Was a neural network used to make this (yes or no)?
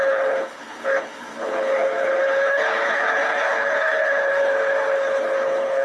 yes